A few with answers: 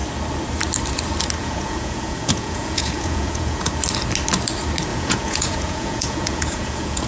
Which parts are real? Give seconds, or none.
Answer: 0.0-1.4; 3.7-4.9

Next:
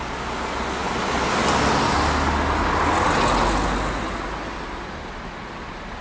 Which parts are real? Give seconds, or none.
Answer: 0.0-6.0

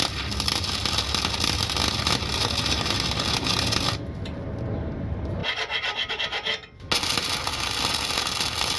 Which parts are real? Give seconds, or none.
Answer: 0.0-8.8

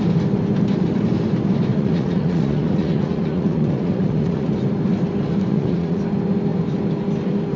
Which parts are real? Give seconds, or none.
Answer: 0.0-1.7; 4.5-5.5; 6.0-7.6

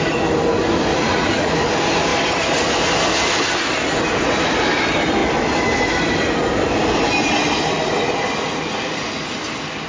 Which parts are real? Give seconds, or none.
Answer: 0.0-0.9; 1.5-9.9

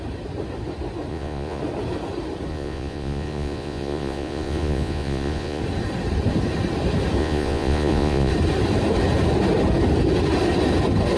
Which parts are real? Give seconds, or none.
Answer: 0.0-1.1; 1.6-2.5; 5.6-7.2; 8.3-11.2

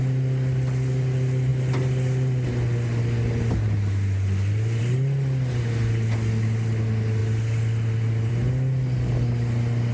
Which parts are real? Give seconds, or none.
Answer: 0.0-9.9

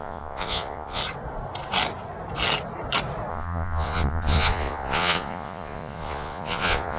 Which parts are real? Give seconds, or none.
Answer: 1.0-3.3